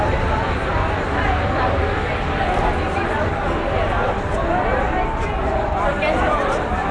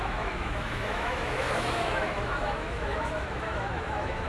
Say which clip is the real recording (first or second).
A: first